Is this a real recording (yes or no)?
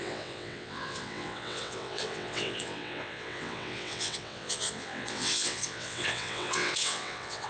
no